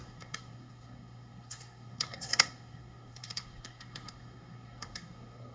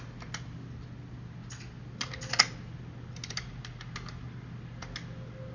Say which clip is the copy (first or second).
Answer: first